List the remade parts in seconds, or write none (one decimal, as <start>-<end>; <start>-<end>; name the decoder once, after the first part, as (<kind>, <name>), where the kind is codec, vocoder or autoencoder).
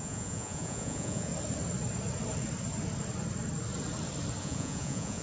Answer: 0.0-1.3 (vocoder, Vocos); 4.4-5.2